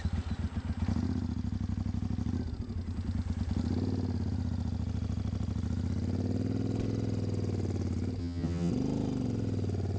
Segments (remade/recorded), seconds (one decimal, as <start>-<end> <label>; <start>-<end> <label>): 0.0-8.2 recorded; 8.2-8.7 remade; 8.7-10.0 recorded